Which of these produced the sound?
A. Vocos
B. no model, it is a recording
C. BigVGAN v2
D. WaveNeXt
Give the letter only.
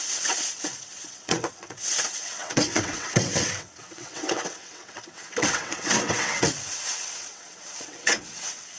D